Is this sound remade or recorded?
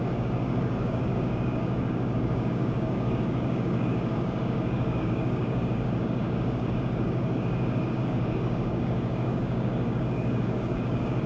remade